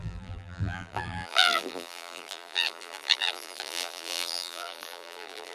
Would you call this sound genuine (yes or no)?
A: no